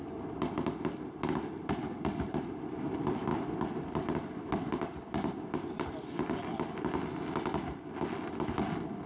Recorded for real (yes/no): yes